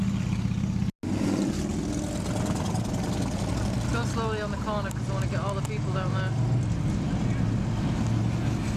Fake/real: real